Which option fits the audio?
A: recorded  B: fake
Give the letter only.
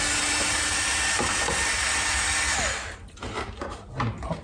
A